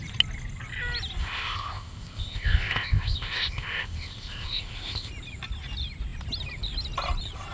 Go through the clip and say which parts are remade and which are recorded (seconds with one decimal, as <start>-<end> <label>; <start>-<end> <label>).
0.0-1.2 recorded; 1.2-5.1 remade; 5.1-7.5 recorded